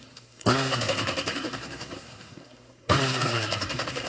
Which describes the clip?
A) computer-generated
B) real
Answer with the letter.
A